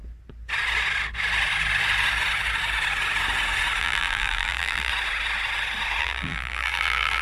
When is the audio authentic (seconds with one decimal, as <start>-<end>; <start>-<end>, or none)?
0.0-3.8; 4.9-6.0